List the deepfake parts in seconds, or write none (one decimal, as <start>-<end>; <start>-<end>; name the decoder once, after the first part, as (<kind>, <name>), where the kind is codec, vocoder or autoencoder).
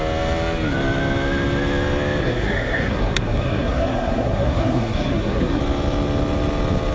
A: 2.2-5.6 (codec, SNAC)